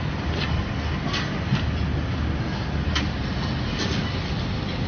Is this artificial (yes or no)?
no